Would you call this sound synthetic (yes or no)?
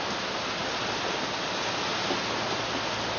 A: no